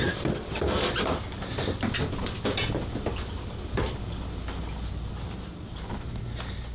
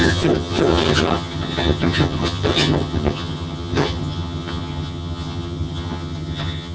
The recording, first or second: first